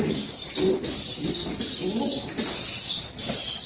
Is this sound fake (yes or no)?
no